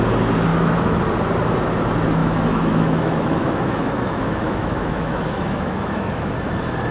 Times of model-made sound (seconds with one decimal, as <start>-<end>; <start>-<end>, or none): 0.5-1.0; 2.2-6.3